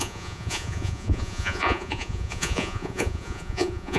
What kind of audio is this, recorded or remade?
remade